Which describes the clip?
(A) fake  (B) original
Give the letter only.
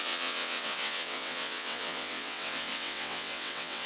A